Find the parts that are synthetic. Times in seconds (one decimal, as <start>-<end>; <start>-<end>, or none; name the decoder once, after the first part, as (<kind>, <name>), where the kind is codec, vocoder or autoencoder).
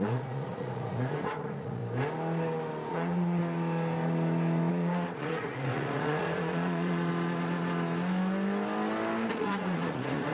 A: 0.0-1.8 (vocoder, Vocos); 2.9-3.4; 4.7-7.1; 9.3-10.3